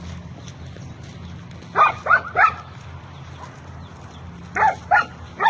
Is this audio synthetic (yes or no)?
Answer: no